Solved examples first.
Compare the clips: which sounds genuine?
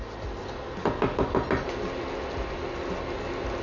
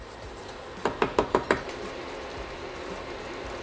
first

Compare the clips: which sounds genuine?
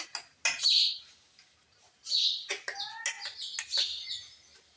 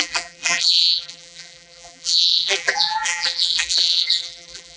first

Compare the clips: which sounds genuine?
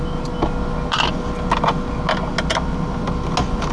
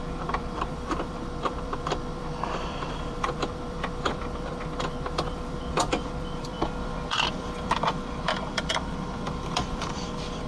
first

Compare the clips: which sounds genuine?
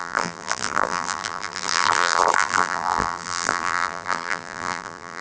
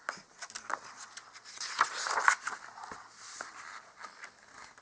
second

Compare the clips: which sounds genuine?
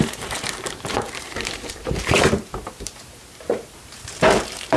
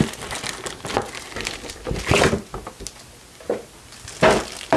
second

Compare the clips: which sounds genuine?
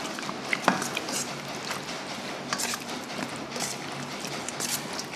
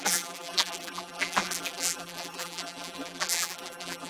first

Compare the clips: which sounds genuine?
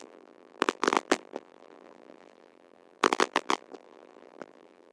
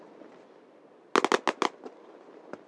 second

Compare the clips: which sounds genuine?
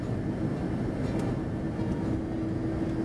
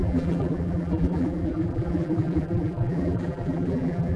first